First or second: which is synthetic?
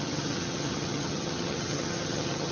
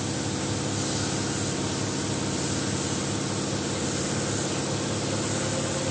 first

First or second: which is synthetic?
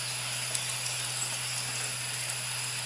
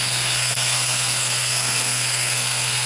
second